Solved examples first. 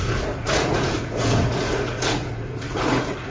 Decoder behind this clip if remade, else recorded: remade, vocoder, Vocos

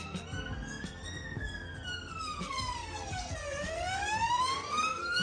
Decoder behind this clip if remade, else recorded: remade, codec, SNAC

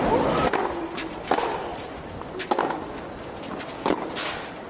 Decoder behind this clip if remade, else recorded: recorded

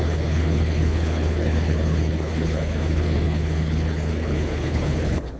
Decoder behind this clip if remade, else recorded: remade, codec, HILCodec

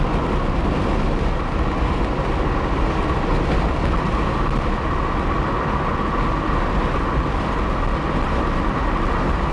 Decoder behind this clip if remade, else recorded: recorded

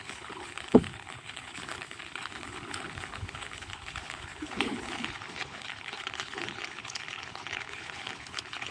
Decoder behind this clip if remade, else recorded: remade, codec, HILCodec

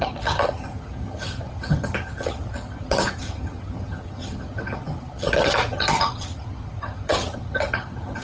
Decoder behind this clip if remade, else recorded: remade, vocoder, HiFi-GAN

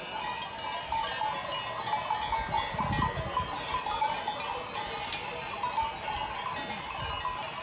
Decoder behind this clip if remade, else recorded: recorded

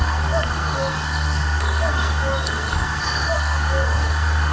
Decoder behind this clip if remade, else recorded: remade, codec, SNAC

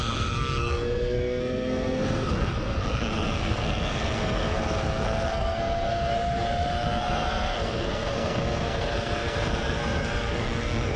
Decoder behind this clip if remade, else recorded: remade, codec, SNAC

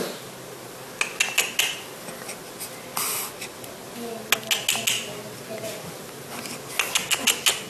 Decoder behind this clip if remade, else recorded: recorded